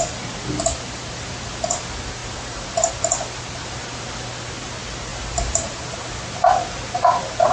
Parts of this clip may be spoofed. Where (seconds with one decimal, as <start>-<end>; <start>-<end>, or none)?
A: 2.2-2.9; 5.1-6.2